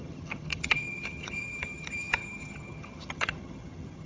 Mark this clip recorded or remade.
remade